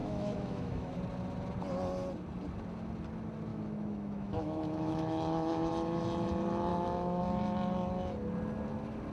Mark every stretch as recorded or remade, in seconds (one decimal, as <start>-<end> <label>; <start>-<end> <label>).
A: 0.0-0.9 remade; 0.9-3.5 recorded; 3.5-5.7 remade; 5.7-6.7 recorded; 6.7-7.2 remade; 7.2-9.1 recorded